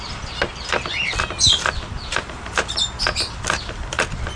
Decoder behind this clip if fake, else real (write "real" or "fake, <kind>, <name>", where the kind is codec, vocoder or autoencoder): real